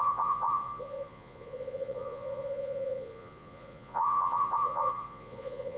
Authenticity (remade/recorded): remade